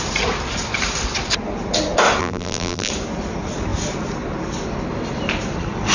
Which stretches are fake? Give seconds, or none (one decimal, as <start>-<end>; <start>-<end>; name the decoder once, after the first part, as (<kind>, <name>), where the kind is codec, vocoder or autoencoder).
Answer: 2.2-2.9 (vocoder, BigVGAN v2)